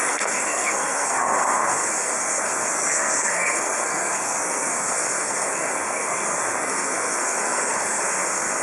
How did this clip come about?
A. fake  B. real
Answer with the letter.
A